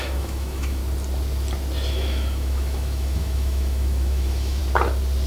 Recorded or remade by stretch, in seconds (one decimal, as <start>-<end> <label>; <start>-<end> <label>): 0.0-0.8 remade; 0.8-1.9 recorded; 1.9-4.6 remade; 4.6-5.3 recorded